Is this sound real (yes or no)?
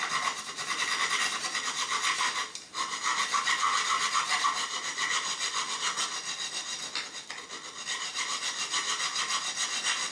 yes